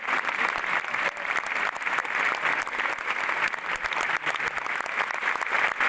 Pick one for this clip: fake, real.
real